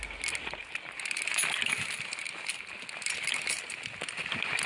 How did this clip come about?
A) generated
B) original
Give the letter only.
B